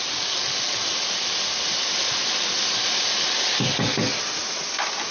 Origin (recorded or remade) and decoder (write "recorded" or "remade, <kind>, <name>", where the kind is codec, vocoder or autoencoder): recorded